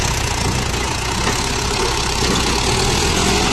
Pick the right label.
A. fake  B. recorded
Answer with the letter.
A